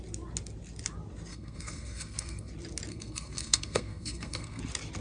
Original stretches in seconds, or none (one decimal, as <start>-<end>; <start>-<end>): 0.0-1.3; 2.5-2.9; 4.6-5.0